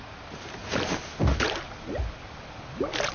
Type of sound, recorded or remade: recorded